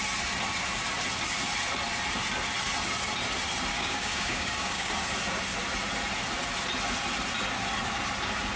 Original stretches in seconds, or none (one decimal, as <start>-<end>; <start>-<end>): 0.0-3.7; 4.9-8.6